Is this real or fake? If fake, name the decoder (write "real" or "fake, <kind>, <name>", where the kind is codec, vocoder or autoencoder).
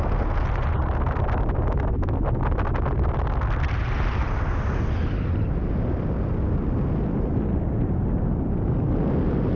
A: real